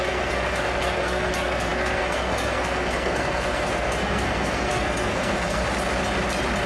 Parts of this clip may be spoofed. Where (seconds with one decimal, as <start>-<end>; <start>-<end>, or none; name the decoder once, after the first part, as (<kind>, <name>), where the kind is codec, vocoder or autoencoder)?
0.0-5.6 (codec, SNAC)